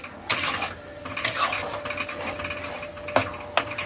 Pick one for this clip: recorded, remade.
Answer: recorded